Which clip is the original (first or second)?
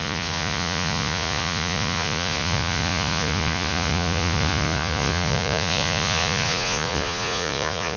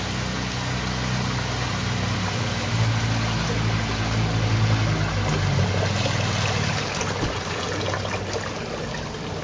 second